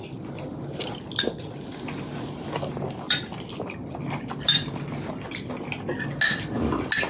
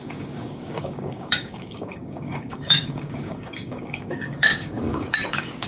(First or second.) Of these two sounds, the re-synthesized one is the second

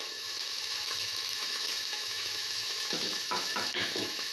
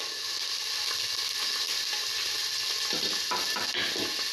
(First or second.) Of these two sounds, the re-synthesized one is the first